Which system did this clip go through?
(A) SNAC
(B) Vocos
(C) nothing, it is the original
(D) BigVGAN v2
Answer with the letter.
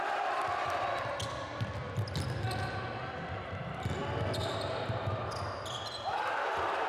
C